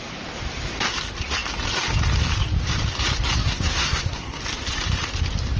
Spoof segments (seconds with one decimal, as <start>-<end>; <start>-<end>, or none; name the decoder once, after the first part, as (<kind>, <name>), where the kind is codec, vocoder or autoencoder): 3.4-4.4 (codec, SNAC)